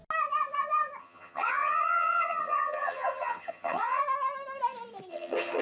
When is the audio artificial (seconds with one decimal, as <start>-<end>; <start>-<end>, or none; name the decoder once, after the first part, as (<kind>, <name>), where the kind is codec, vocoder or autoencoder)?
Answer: 1.0-4.0 (vocoder, HiFi-GAN); 5.1-5.6